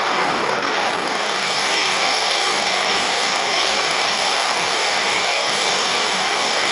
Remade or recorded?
remade